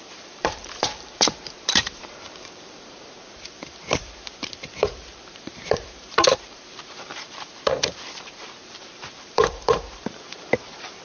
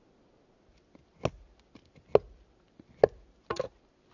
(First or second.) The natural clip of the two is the second